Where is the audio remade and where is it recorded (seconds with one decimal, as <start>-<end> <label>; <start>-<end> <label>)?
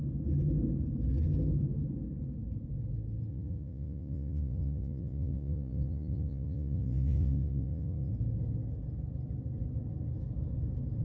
0.0-3.3 recorded; 3.3-8.1 remade; 8.1-11.0 recorded